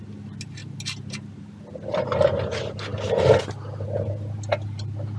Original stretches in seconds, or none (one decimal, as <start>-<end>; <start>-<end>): 0.0-5.2